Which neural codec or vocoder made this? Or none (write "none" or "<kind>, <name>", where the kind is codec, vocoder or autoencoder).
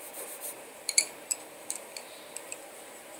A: vocoder, BigVGAN v2